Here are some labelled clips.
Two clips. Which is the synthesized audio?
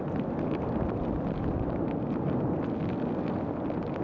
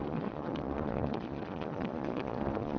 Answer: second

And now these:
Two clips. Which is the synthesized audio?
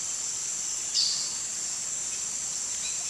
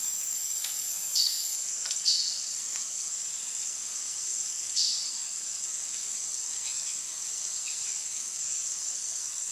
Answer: second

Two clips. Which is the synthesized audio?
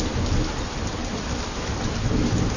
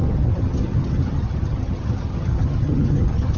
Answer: second